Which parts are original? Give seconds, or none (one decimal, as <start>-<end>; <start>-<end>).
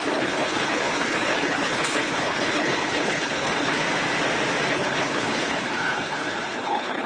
3.8-4.7